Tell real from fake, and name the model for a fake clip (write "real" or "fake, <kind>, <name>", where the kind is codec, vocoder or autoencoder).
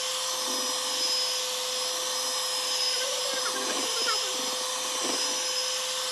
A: real